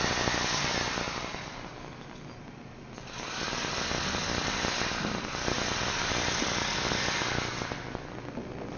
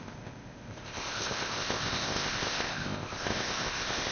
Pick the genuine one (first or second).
first